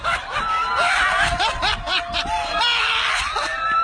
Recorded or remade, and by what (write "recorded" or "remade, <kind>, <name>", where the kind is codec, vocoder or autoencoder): recorded